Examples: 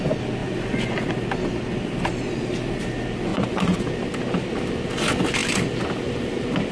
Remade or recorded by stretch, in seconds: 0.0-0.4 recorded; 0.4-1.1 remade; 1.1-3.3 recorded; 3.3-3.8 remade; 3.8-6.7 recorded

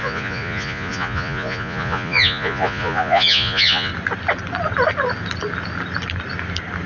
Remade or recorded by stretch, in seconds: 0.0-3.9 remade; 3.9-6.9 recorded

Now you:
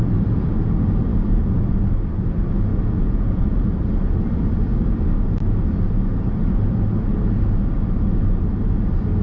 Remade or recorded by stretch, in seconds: 0.0-2.7 recorded; 2.7-3.6 remade; 3.6-9.2 recorded

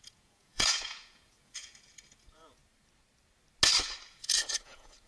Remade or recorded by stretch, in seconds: 0.0-2.6 remade; 2.6-4.1 recorded; 4.1-5.1 remade

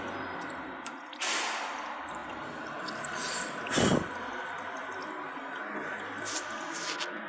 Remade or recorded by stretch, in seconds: 0.0-7.3 recorded